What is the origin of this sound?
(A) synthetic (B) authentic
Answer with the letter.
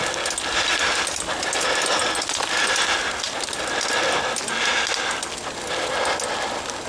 B